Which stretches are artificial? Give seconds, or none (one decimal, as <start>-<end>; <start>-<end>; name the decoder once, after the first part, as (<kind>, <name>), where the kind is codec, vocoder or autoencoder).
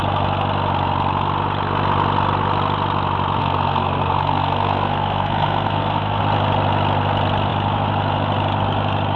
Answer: 3.4-6.2 (codec, SNAC)